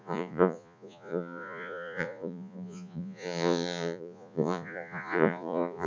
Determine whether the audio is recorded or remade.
remade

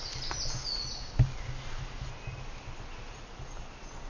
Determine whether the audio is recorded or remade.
recorded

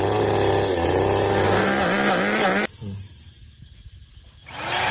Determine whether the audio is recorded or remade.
recorded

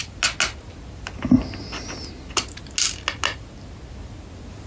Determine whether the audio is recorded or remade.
recorded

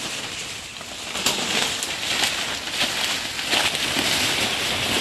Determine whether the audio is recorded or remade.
recorded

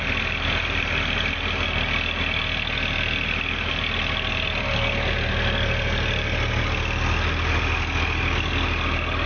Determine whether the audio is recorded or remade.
recorded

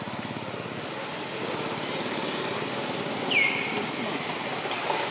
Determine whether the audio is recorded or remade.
recorded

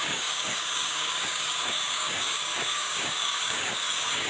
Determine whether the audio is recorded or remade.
remade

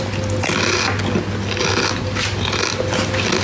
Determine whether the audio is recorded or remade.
recorded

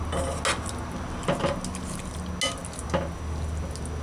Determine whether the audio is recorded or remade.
recorded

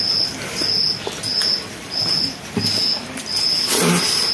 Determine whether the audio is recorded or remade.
recorded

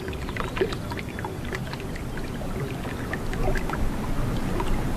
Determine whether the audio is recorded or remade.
recorded